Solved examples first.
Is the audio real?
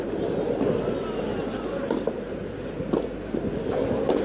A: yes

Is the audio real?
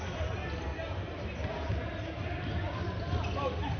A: yes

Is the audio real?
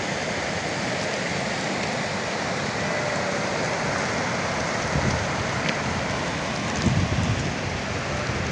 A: yes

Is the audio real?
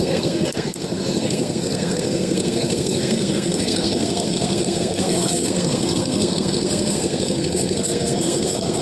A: no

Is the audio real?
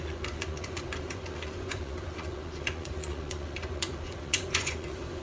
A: no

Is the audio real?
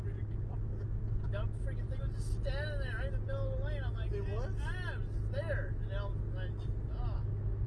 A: yes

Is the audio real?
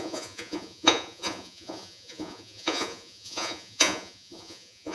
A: no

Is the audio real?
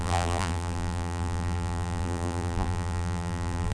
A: no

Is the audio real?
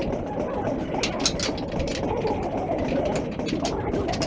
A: yes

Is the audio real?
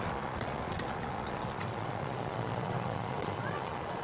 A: no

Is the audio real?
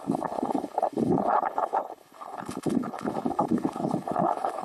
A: no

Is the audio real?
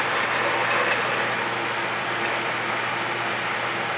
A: yes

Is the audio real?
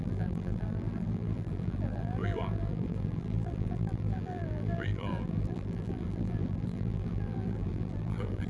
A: no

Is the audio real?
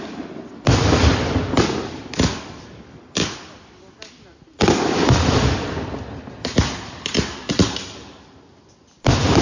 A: yes